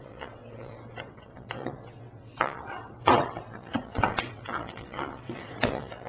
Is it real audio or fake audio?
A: fake